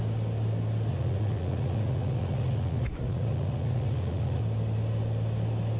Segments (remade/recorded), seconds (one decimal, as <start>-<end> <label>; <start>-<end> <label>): 0.0-0.9 recorded; 0.9-4.4 remade; 4.4-5.8 recorded

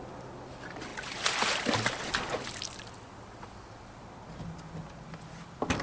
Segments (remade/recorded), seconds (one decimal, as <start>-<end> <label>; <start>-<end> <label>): 0.0-5.8 recorded

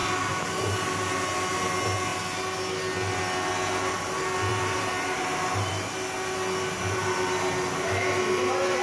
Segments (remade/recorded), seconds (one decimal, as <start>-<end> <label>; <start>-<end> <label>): 0.0-0.5 remade; 0.5-4.5 recorded; 4.5-5.6 remade; 5.6-8.8 recorded

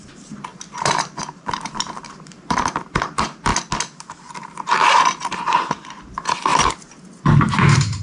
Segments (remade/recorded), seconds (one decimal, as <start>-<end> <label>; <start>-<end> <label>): 0.0-3.5 remade; 3.5-4.3 recorded; 4.3-6.5 remade; 6.5-7.6 recorded; 7.6-8.0 remade

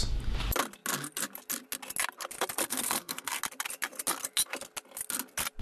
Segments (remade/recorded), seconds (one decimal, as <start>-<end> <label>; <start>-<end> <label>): 0.0-2.6 recorded; 2.6-3.4 remade; 3.4-5.6 recorded